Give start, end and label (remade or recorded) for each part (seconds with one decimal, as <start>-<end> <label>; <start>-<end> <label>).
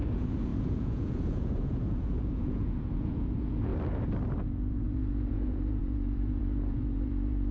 0.0-3.7 remade; 3.7-4.4 recorded; 4.4-7.5 remade